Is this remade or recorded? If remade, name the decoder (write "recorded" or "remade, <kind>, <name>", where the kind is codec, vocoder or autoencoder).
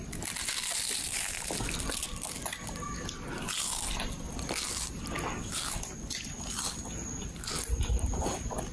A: recorded